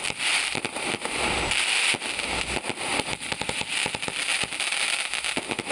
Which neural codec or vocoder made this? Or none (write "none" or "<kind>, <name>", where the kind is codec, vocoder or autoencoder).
none